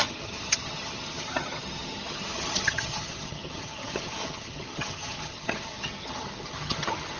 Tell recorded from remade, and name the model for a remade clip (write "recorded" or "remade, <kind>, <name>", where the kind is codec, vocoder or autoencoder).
remade, vocoder, HiFi-GAN